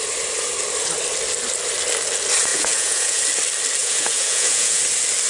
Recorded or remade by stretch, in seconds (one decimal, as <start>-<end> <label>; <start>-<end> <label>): 0.0-2.5 recorded; 2.5-3.2 remade; 3.2-3.8 recorded; 3.8-4.8 remade; 4.8-5.3 recorded